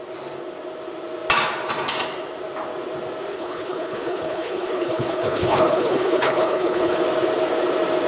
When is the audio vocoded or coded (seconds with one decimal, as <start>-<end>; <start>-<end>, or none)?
3.3-7.0